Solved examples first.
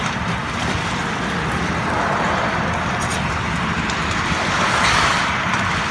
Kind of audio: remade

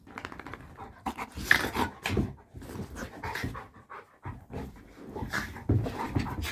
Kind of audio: recorded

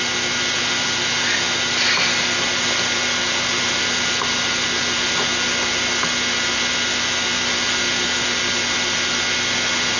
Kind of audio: recorded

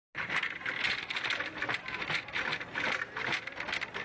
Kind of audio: recorded